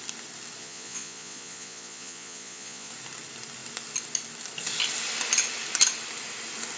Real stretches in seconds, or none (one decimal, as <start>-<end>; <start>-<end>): 0.0-0.6; 2.9-6.8